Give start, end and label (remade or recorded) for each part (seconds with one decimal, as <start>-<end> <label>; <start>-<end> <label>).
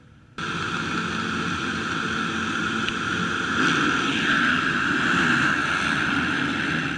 0.0-7.0 recorded